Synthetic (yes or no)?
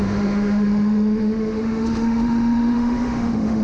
yes